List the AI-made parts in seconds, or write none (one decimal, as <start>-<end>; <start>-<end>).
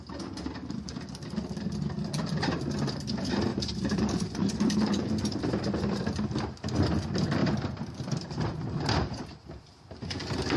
3.5-5.1; 7.4-9.5